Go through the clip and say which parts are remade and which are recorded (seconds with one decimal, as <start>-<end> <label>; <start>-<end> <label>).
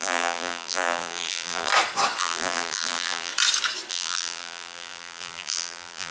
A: 0.0-1.7 remade; 1.7-2.2 recorded; 2.2-3.3 remade; 3.3-3.9 recorded; 3.9-6.1 remade